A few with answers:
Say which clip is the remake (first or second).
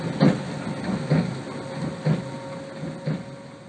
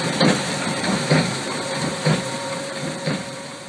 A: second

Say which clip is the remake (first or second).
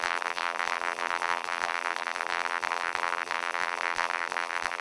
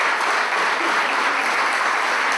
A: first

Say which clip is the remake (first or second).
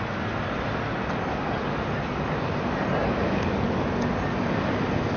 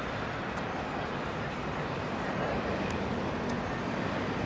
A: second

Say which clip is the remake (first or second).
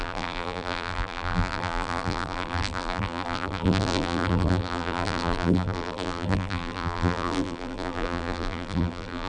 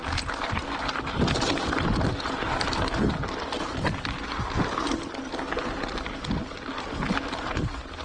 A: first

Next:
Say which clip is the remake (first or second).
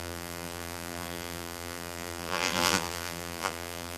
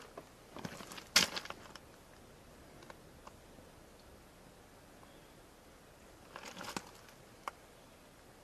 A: first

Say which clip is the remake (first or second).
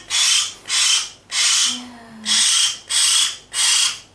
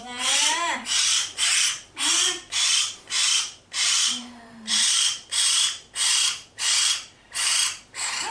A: second